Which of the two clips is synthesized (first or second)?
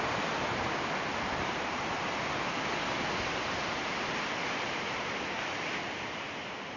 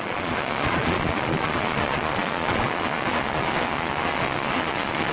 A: second